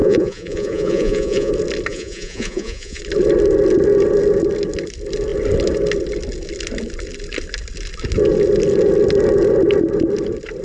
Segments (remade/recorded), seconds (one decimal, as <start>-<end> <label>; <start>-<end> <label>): 0.0-1.5 remade; 1.5-1.9 recorded; 1.9-3.0 remade; 3.0-10.6 recorded